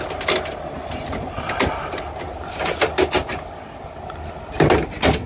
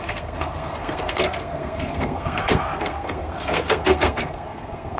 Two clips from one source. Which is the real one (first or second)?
first